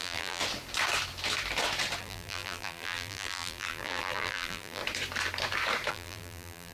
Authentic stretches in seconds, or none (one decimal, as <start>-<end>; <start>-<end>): 0.4-2.0; 4.8-5.9